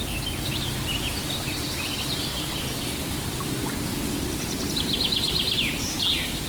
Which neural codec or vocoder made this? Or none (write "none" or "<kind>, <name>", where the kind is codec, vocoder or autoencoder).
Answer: none